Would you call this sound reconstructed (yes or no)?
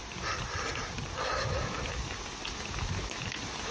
no